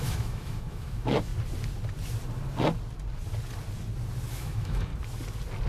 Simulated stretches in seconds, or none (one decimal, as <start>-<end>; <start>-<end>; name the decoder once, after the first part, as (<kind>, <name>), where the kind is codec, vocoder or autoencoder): 0.0-1.3 (autoencoder, DAC-VAE); 4.3-4.9